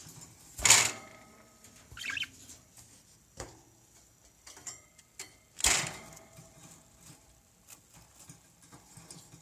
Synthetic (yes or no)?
no